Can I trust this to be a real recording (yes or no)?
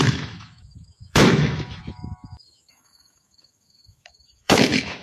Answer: no